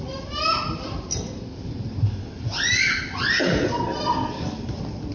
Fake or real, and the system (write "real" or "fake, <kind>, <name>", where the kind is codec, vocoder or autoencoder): fake, vocoder, BigVGAN v2